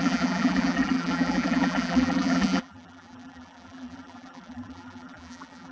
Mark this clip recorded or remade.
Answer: remade